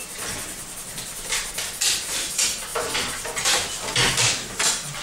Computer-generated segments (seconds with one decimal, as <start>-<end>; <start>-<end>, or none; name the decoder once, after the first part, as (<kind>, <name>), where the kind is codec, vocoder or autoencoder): 2.7-3.7 (vocoder, BigVGAN v2)